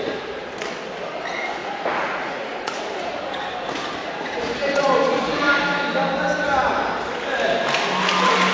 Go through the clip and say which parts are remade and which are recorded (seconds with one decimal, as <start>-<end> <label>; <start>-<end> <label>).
0.0-1.6 recorded; 1.6-3.3 remade; 3.3-4.0 recorded; 4.0-5.4 remade; 5.4-8.5 recorded